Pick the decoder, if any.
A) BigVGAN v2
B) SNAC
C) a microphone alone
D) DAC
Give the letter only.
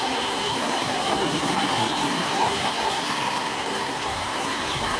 B